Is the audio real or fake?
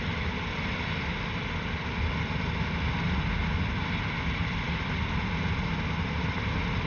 real